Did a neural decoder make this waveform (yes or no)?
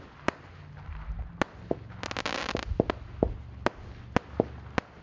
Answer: no